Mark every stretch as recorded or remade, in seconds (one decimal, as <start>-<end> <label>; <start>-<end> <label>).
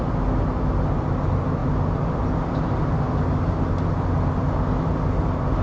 0.0-5.6 recorded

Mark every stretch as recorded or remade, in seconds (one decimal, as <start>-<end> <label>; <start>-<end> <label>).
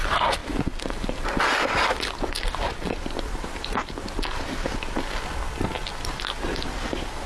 0.0-7.3 recorded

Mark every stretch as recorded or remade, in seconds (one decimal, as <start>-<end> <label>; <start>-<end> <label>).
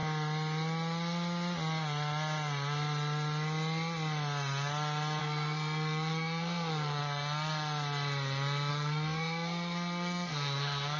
0.0-5.2 recorded; 5.2-7.0 remade; 7.0-8.7 recorded; 8.7-11.0 remade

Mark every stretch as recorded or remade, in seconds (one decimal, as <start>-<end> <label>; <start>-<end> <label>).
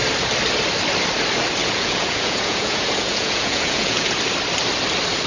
0.0-1.6 recorded; 1.6-4.2 remade; 4.2-5.3 recorded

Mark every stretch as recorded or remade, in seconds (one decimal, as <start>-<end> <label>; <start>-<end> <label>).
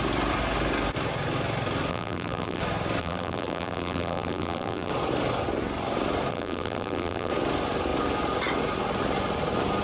0.0-1.9 recorded; 1.9-2.6 remade; 2.6-3.0 recorded; 3.0-4.9 remade; 4.9-6.3 recorded; 6.3-7.3 remade; 7.3-9.8 recorded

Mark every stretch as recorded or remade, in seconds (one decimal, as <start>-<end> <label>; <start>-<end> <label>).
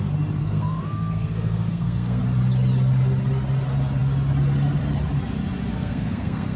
0.0-0.4 recorded; 0.4-2.2 remade; 2.2-5.7 recorded; 5.7-6.6 remade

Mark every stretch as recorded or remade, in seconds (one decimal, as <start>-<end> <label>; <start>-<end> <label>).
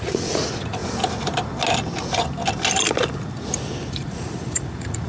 0.0-0.8 remade; 0.8-3.9 recorded; 3.9-5.1 remade